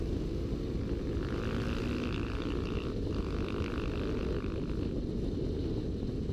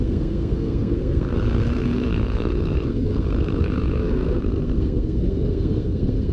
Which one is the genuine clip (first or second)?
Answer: first